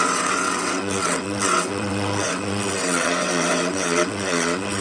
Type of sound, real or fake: fake